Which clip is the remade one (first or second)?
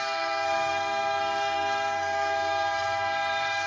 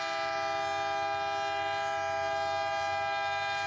first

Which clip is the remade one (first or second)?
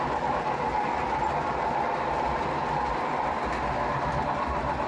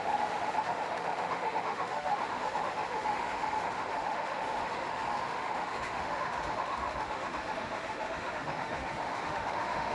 second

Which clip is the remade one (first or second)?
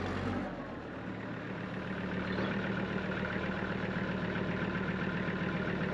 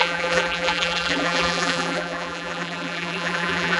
second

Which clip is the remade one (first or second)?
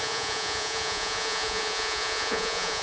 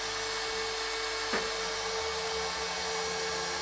first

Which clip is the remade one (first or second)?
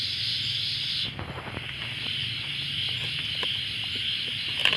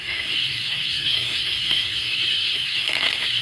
second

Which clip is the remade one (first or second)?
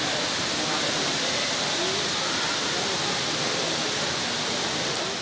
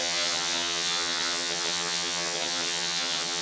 second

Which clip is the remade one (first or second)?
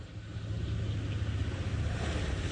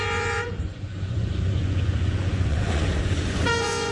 second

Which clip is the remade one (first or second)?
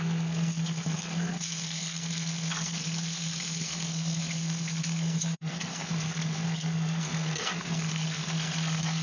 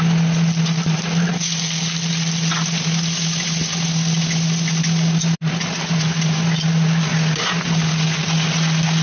first